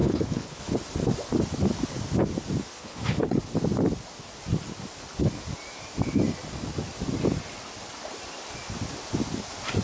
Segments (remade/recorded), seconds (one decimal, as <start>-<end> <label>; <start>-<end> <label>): 0.0-0.6 remade; 0.6-2.8 recorded; 2.8-3.4 remade; 3.4-9.8 recorded